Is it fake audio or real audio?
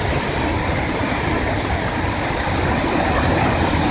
real